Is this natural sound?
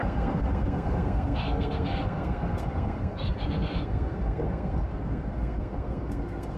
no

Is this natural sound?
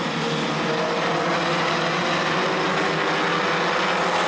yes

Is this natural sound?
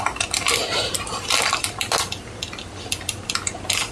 yes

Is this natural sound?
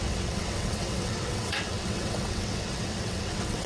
no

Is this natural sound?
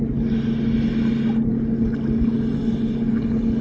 yes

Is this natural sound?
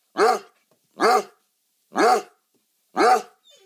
yes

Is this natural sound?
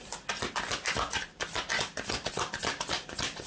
yes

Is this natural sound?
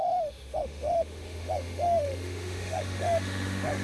no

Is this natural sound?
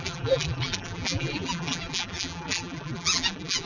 no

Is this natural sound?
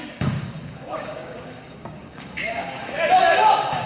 no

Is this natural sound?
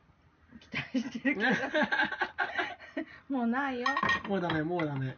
yes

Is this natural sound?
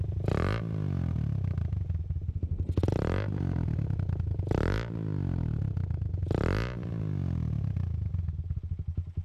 yes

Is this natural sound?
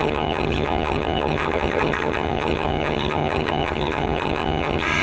no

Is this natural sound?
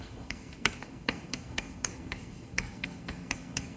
no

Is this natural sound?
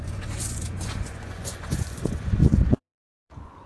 no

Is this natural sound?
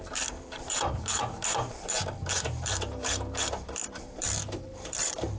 no